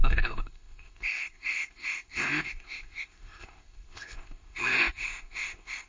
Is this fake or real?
fake